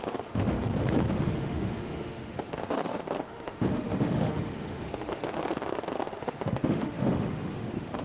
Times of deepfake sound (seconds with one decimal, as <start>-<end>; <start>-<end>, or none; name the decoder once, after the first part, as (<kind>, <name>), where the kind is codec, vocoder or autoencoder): 0.0-0.6 (autoencoder, DAC-VAE); 1.1-8.0

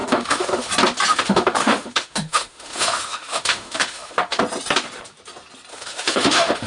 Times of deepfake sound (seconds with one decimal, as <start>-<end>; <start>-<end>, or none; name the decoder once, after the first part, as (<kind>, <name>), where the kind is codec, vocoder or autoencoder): 0.0-0.7 (autoencoder, DAC-VAE); 1.1-4.4; 5.7-6.7

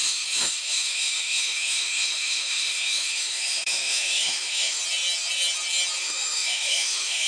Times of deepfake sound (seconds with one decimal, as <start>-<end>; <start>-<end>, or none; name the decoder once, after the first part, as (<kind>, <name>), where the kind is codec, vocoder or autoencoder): 0.0-4.8 (autoencoder, DAC-VAE); 6.0-7.3

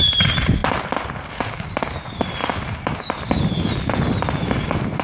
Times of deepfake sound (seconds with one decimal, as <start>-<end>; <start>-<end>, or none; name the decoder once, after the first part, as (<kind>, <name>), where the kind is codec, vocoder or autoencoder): none

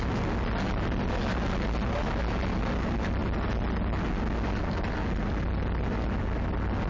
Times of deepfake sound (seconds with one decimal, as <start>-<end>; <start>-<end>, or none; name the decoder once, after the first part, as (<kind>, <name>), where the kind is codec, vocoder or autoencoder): none

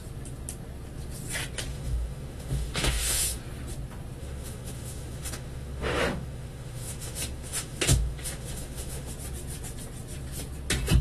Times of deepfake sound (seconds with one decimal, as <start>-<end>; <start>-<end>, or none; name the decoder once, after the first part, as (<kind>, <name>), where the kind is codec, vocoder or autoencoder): 1.7-3.4 (autoencoder, DAC-VAE); 4.2-9.1

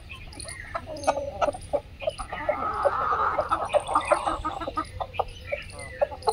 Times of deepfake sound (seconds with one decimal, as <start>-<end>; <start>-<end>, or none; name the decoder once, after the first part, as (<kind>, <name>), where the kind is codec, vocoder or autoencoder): none

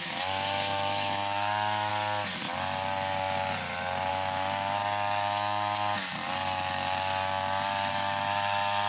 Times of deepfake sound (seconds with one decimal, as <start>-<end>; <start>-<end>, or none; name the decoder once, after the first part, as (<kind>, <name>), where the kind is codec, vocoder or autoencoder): 0.0-1.9 (autoencoder, DAC-VAE); 4.1-4.8; 7.9-8.9